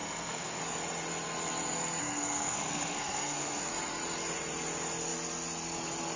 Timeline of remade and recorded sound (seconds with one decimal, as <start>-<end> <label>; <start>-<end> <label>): 0.0-0.6 remade; 0.6-2.0 recorded; 2.0-3.6 remade; 3.6-6.2 recorded